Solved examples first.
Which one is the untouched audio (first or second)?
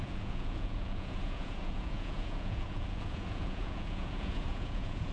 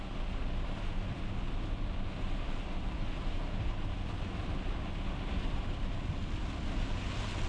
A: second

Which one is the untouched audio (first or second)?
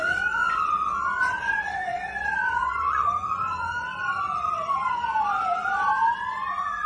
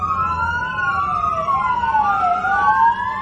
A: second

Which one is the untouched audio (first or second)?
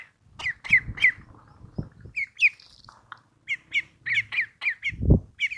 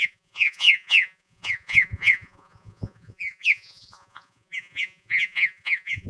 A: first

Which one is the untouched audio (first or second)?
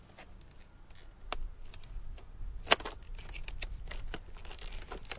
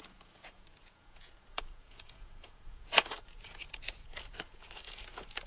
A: first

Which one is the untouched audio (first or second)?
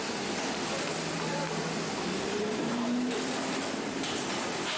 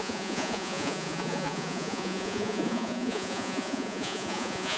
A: first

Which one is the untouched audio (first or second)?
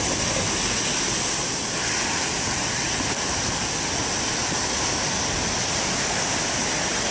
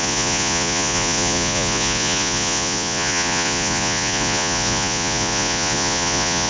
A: first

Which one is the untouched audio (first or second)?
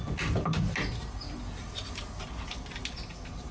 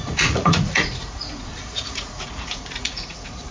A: first